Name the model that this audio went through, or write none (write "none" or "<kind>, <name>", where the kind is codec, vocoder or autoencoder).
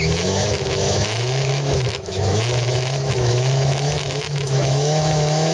autoencoder, DAC-VAE